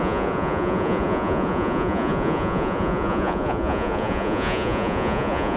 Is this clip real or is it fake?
fake